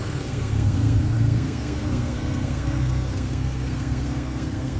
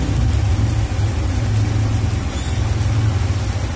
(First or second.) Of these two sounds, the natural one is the second